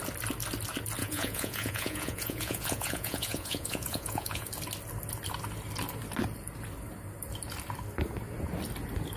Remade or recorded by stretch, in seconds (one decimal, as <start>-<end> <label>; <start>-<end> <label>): 0.0-1.0 recorded; 1.0-4.5 remade; 4.5-9.2 recorded